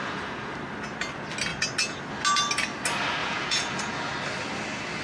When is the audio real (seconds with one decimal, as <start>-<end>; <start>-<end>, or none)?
0.5-3.2; 4.0-5.0